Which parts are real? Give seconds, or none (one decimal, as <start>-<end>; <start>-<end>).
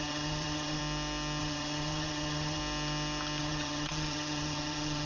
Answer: 0.8-1.4; 2.6-3.4